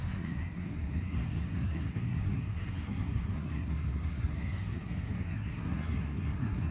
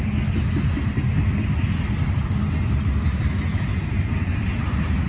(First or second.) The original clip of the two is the second